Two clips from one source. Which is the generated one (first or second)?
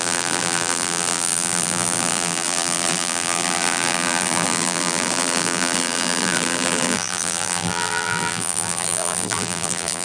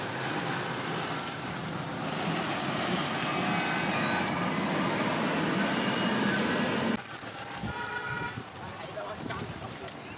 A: first